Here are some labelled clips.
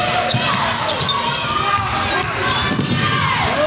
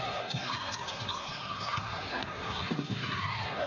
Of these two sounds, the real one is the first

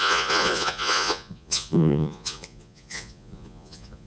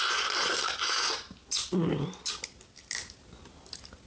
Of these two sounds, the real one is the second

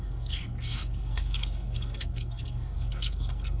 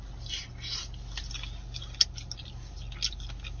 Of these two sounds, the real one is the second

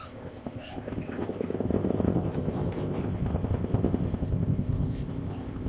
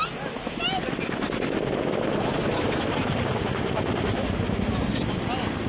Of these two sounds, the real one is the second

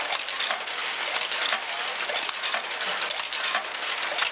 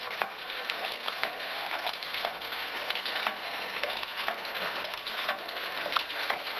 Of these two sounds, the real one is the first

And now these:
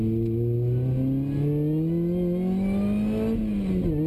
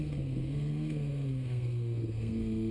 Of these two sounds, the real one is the first